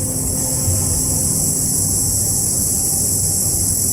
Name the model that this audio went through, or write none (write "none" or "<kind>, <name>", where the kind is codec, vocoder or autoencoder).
none